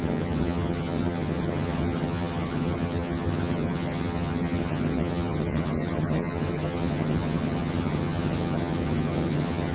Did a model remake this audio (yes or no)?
yes